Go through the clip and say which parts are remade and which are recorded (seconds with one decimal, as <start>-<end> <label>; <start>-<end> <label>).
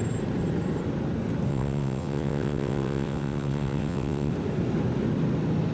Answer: 0.0-1.5 recorded; 1.5-4.3 remade; 4.3-5.7 recorded